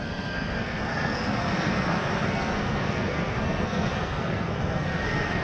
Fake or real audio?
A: fake